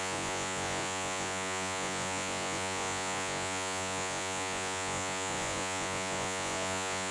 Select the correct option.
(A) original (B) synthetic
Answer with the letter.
B